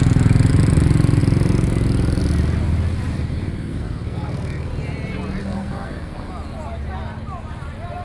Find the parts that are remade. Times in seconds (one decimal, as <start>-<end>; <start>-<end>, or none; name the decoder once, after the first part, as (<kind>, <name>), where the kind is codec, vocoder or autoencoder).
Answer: 3.3-4.7 (codec, SNAC); 5.4-6.3